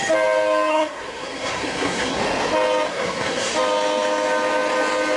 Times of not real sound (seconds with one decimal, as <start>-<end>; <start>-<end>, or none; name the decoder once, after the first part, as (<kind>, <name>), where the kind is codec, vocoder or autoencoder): 0.7-2.2 (codec, SNAC); 2.9-3.5